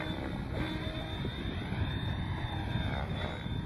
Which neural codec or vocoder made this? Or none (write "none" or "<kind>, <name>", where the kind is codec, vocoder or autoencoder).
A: none